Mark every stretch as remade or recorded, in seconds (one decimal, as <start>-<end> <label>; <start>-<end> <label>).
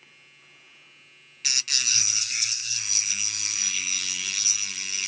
0.0-1.9 recorded; 1.9-4.0 remade; 4.0-5.1 recorded